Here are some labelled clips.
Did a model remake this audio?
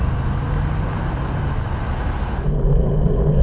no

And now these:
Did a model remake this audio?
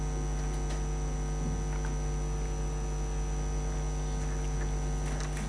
no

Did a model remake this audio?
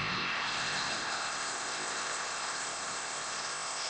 yes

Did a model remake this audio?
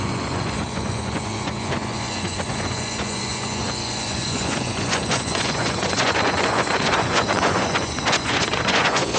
yes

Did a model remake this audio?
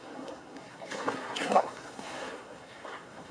yes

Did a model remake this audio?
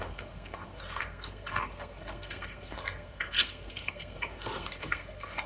yes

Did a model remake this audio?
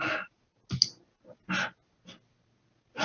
no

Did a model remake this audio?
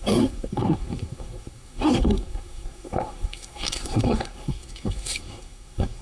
yes